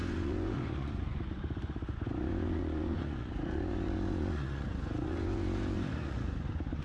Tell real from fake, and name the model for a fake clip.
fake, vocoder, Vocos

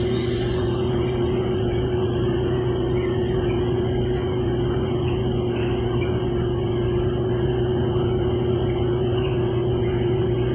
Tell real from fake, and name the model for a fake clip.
fake, vocoder, Vocos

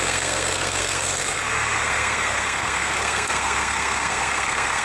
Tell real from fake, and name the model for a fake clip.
fake, codec, SNAC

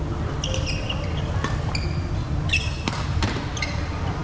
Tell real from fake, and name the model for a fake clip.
real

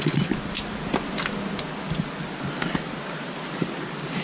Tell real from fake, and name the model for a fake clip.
real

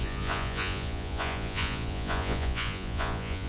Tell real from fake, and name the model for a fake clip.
fake, vocoder, Vocos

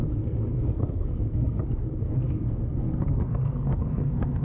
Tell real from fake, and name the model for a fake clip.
fake, codec, SNAC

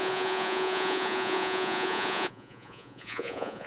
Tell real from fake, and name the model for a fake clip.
fake, vocoder, Vocos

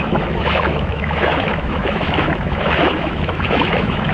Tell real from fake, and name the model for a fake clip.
fake, autoencoder, DAC-VAE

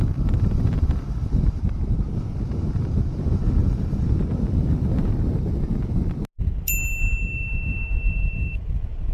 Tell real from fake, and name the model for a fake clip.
real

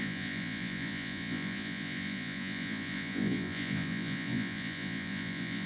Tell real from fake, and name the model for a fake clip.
fake, vocoder, Vocos